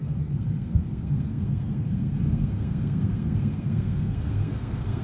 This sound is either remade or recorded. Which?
remade